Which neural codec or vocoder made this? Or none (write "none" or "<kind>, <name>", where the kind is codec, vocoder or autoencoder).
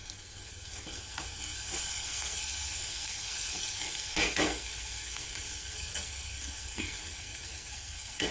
codec, SNAC